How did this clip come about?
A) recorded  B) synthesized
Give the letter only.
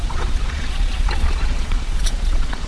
B